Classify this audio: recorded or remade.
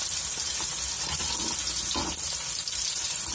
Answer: recorded